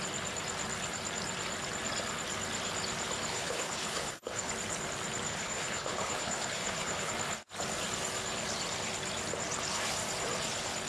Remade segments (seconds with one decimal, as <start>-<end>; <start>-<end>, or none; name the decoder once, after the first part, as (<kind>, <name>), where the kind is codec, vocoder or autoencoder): 3.3-4.5 (codec, HILCodec); 5.3-7.1